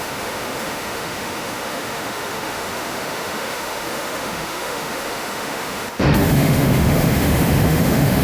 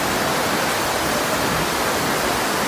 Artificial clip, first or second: first